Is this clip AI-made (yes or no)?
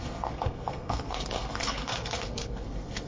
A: yes